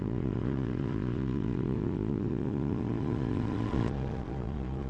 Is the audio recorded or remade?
remade